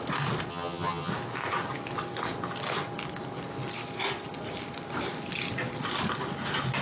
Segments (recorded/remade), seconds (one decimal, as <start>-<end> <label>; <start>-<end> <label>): 0.0-0.5 recorded; 0.5-1.1 remade; 1.1-6.8 recorded